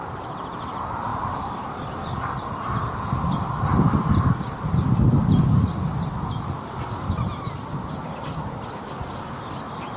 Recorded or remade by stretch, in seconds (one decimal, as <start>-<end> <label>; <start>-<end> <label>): 0.0-10.0 recorded

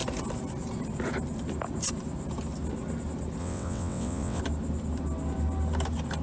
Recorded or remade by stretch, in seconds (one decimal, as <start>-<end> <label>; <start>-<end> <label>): 0.0-3.4 recorded; 3.4-4.4 remade; 4.4-6.2 recorded

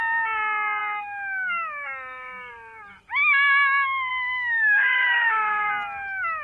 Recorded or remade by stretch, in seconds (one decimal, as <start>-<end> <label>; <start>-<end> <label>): 0.0-4.1 recorded; 4.1-5.7 remade; 5.7-6.4 recorded

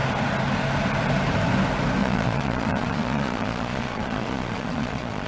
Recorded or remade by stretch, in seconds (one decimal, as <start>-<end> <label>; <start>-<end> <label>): 0.0-2.0 recorded; 2.0-5.3 remade

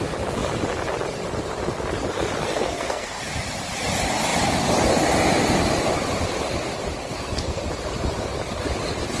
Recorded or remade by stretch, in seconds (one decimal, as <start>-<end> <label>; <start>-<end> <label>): 0.0-2.4 recorded; 2.4-3.2 remade; 3.2-7.0 recorded; 7.0-7.6 remade; 7.6-9.2 recorded

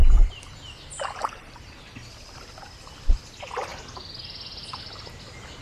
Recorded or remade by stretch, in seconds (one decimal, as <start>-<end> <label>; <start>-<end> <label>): 0.0-5.6 recorded

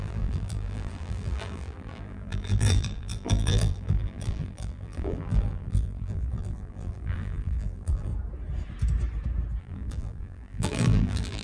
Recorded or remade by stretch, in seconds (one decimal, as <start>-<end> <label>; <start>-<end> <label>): 0.0-8.1 remade; 8.1-9.6 recorded; 9.6-11.4 remade